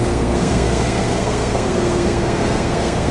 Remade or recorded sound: remade